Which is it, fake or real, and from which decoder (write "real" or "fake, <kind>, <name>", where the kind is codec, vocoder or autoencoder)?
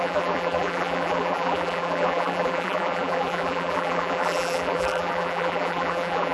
fake, vocoder, BigVGAN v2